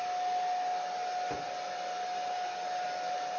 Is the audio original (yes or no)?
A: yes